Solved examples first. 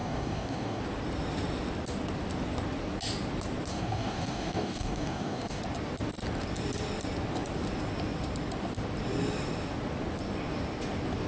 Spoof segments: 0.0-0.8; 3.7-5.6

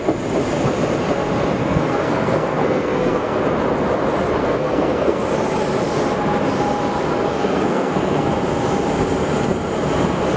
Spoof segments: 1.6-3.4; 4.4-5.2; 7.3-8.3

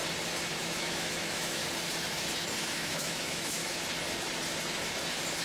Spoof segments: 0.6-1.6; 2.6-3.6